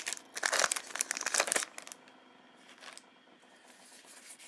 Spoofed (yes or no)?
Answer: no